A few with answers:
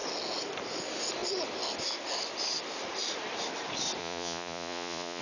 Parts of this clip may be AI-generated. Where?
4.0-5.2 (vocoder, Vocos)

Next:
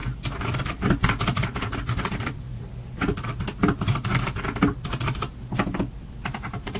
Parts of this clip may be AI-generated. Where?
0.7-2.5 (vocoder, BigVGAN v2); 6.1-6.8

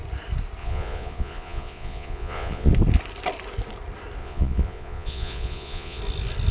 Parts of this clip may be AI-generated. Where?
0.6-2.7 (vocoder, Vocos); 4.2-6.0

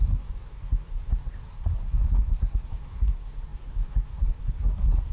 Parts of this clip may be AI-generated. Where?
0.0-5.1 (codec, SNAC)